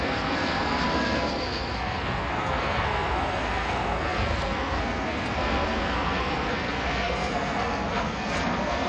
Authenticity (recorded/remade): remade